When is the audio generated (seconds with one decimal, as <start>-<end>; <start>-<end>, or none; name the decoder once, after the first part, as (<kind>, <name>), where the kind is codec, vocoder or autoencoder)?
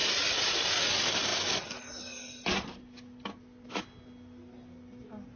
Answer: none